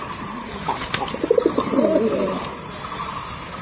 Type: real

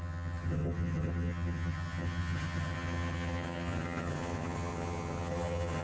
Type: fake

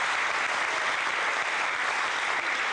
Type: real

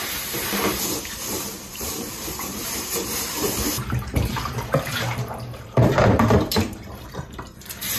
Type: fake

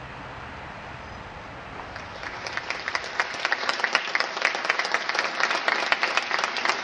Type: fake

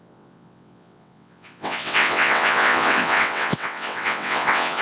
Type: fake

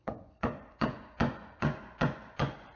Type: fake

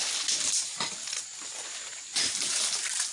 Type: real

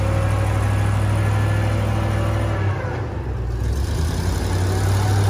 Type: real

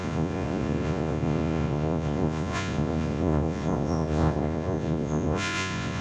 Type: fake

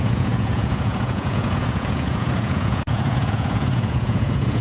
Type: fake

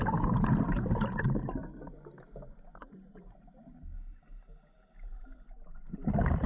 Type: real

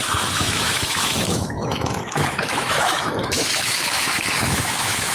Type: fake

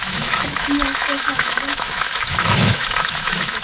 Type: fake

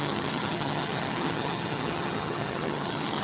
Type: fake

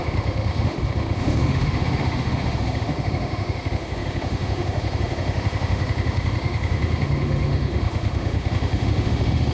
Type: fake